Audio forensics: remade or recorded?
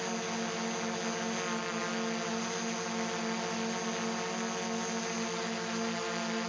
recorded